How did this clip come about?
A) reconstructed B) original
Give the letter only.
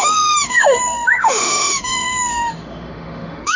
A